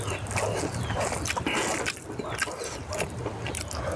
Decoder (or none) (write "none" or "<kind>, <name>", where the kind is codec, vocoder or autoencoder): none